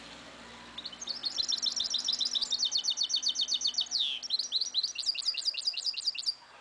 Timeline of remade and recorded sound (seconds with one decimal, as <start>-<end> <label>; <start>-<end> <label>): 0.0-6.6 recorded